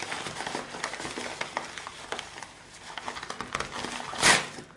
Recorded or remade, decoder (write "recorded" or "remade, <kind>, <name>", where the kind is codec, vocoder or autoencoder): remade, vocoder, BigVGAN v2